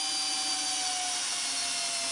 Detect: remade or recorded recorded